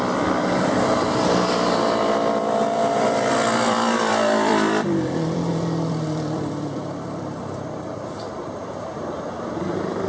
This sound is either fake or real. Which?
fake